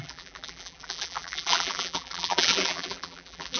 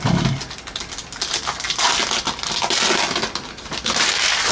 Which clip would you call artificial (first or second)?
first